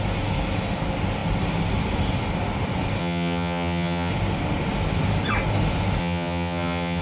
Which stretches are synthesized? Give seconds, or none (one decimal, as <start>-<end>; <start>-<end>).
3.0-4.1; 6.0-7.0